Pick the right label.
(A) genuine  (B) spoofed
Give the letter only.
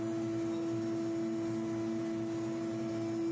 A